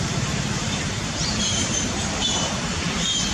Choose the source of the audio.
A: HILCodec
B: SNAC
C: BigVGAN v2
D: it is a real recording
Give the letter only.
C